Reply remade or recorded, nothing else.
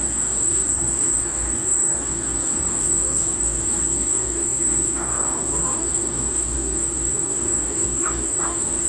remade